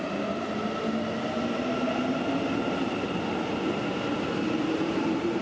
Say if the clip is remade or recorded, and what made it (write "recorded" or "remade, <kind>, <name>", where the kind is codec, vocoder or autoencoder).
recorded